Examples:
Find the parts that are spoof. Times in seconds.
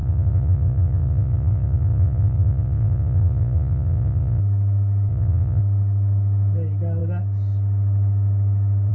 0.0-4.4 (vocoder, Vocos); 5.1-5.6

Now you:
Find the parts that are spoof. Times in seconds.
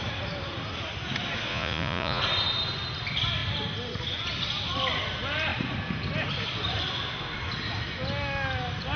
1.5-2.2 (vocoder, Vocos)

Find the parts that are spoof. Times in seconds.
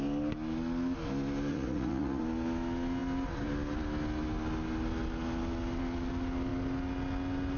1.5-2.2 (vocoder, Vocos)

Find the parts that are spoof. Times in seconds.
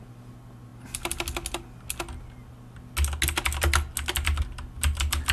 none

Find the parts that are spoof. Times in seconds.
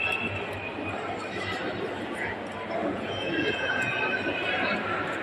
2.8-4.0 (vocoder, Vocos)